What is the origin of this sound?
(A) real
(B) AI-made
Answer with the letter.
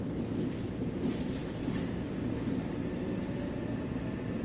A